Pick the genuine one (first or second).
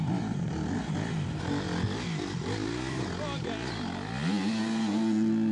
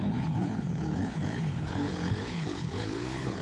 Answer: first